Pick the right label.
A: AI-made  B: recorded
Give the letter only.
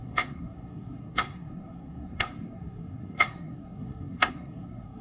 A